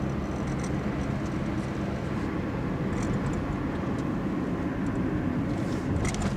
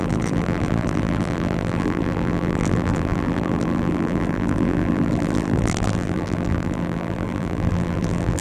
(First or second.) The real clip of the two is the first